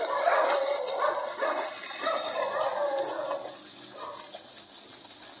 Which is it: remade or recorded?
recorded